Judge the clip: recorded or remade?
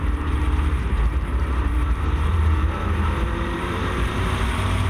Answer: remade